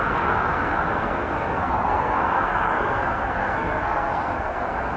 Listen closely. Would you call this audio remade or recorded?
remade